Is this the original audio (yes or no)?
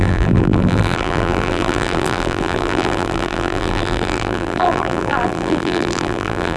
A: no